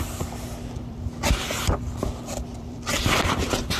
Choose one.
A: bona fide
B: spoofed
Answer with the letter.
B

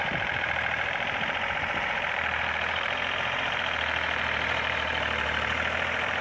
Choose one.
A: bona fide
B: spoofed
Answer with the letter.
B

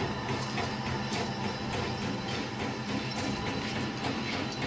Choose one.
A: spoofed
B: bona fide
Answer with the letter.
B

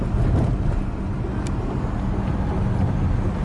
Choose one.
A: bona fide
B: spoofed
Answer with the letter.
A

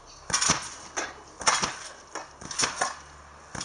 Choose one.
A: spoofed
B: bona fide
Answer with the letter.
B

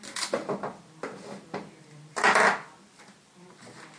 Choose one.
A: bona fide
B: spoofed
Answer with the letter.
A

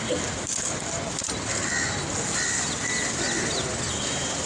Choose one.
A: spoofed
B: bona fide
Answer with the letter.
A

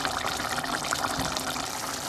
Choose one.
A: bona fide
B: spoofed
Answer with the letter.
B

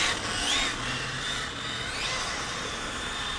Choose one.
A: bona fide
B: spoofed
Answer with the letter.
A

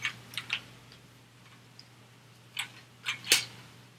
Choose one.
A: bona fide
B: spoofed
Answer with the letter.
A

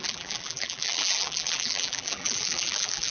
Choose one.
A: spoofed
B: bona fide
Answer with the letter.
A